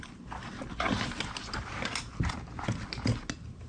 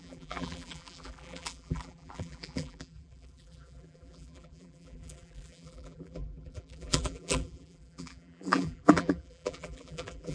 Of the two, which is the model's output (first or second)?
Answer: second